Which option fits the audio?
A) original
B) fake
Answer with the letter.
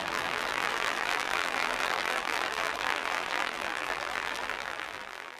B